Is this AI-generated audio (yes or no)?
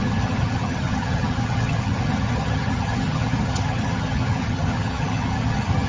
yes